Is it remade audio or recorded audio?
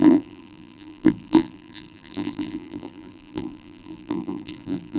remade